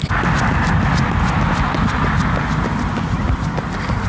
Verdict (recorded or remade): recorded